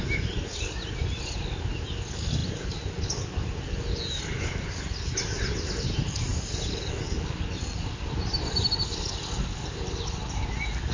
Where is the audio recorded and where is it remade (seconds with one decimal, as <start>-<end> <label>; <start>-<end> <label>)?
0.0-10.9 recorded